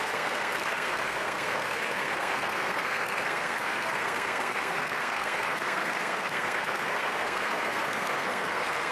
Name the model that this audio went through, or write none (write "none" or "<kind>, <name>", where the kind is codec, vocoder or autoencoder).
codec, SNAC